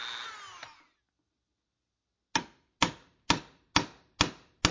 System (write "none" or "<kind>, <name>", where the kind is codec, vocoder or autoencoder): none